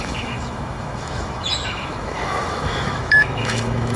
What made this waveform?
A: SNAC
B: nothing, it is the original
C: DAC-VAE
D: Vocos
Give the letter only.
C